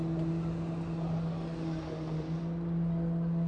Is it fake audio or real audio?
real